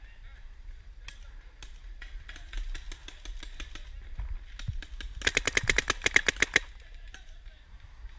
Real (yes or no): yes